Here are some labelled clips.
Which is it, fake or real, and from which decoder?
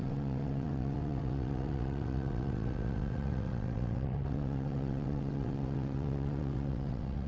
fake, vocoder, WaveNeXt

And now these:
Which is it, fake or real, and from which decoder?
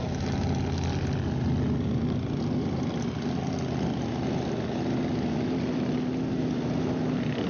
real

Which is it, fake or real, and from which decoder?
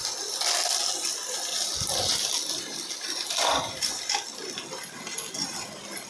real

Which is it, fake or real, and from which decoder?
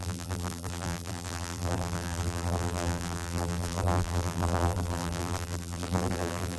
fake, vocoder, BigVGAN v2